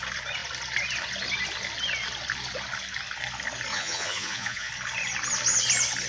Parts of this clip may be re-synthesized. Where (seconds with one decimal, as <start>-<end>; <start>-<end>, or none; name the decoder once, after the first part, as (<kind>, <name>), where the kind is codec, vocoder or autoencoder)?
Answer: 3.7-4.7 (vocoder, Vocos)